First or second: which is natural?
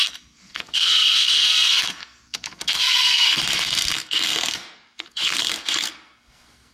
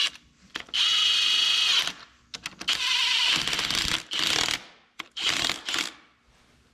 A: second